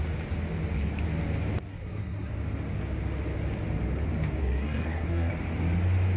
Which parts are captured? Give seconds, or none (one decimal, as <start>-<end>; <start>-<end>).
0.0-1.7; 2.3-4.4; 5.3-6.2